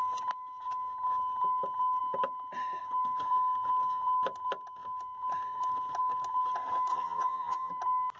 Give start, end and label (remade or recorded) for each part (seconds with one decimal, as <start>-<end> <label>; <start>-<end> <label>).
0.0-6.9 recorded; 6.9-7.7 remade; 7.7-8.2 recorded

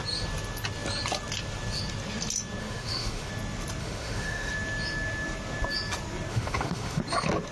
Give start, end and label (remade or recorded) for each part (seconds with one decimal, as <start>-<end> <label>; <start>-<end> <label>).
0.0-2.6 recorded; 2.6-3.3 remade; 3.3-3.8 recorded; 3.8-4.5 remade; 4.5-6.3 recorded; 6.3-7.0 remade; 7.0-7.5 recorded

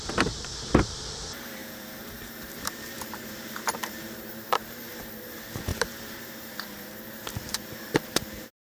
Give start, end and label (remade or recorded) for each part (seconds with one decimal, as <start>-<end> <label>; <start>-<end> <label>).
0.0-8.7 remade

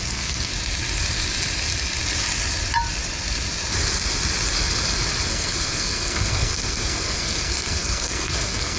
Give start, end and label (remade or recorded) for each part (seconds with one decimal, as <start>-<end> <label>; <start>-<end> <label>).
0.0-0.5 remade; 0.5-5.3 recorded; 5.3-8.8 remade

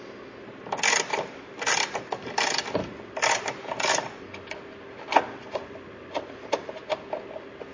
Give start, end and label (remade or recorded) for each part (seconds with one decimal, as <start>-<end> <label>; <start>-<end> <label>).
0.0-1.1 recorded; 1.1-2.3 remade; 2.3-2.8 recorded; 2.8-3.8 remade; 3.8-5.6 recorded; 5.6-6.9 remade; 6.9-7.7 recorded

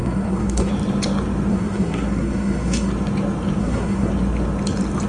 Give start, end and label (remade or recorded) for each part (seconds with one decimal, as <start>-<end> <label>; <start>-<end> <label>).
0.0-0.7 remade; 0.7-1.5 recorded; 1.5-2.9 remade; 2.9-3.6 recorded; 3.6-4.1 remade; 4.1-5.1 recorded